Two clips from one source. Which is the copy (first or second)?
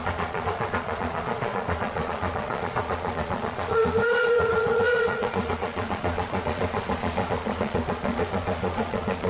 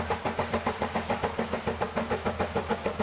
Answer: first